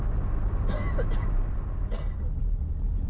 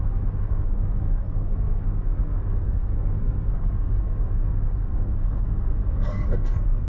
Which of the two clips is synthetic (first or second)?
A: second